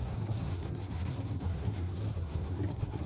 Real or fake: fake